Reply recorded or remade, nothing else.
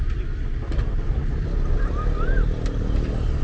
recorded